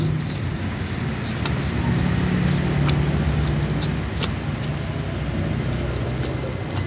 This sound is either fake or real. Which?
real